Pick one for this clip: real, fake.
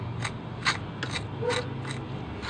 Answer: real